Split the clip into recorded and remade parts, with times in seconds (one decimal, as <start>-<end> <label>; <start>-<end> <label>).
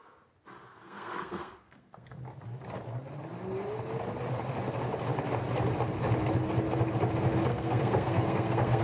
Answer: 0.0-0.7 recorded; 0.7-2.2 remade; 2.2-7.5 recorded; 7.5-8.8 remade